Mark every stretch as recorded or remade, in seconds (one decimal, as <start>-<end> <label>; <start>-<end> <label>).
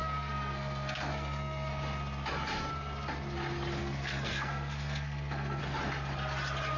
0.0-1.7 remade; 1.7-3.8 recorded; 3.8-5.6 remade; 5.6-6.8 recorded